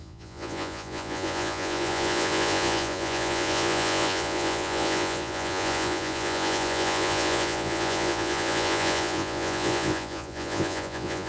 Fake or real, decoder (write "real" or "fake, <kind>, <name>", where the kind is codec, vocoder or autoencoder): fake, vocoder, Vocos